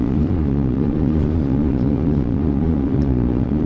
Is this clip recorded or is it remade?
remade